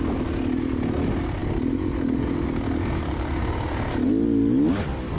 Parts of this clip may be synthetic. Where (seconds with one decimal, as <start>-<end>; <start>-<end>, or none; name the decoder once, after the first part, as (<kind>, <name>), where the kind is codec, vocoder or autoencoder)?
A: none